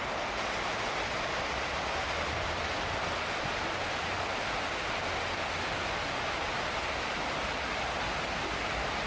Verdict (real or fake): real